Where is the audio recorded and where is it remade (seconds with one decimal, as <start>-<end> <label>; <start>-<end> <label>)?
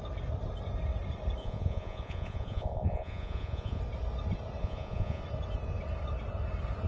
0.0-1.4 recorded; 1.4-3.8 remade; 3.8-4.6 recorded; 4.6-5.2 remade; 5.2-6.9 recorded